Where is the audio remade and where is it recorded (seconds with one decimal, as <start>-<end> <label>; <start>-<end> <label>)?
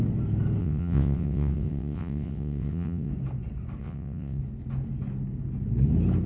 0.0-0.6 recorded; 0.6-3.1 remade; 3.1-3.8 recorded; 3.8-4.4 remade; 4.4-6.3 recorded